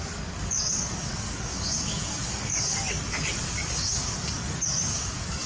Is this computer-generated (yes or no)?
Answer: yes